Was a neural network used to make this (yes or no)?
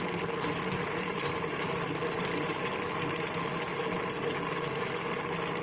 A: no